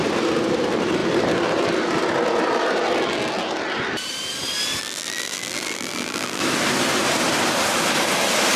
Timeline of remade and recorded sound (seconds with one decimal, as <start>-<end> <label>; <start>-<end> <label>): 0.0-4.8 recorded; 4.8-6.4 remade; 6.4-8.6 recorded

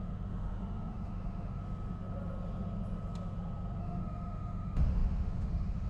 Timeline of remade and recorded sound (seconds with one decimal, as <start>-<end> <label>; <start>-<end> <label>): 0.0-1.6 remade; 1.6-3.8 recorded; 3.8-5.9 remade